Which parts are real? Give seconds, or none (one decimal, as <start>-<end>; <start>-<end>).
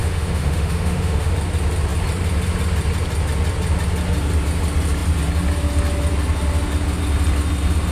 1.3-7.9